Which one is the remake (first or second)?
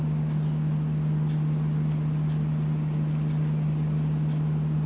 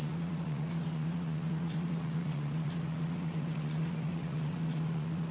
second